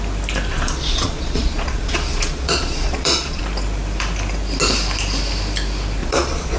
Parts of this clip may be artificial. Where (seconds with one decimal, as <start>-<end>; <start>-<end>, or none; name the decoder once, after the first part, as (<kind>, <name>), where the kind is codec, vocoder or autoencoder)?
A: 0.5-3.4 (vocoder, Vocos); 6.0-6.6